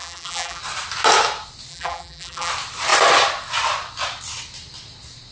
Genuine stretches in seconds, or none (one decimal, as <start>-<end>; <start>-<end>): 0.6-1.7; 2.5-5.3